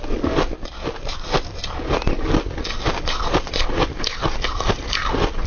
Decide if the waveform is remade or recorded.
recorded